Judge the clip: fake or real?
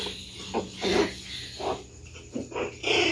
real